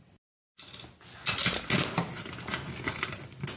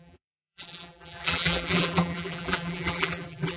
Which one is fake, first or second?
second